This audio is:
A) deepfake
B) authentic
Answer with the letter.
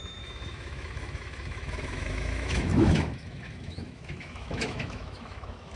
A